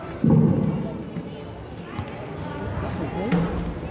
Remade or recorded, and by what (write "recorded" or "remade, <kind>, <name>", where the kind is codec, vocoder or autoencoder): recorded